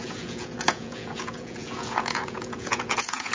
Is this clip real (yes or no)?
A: no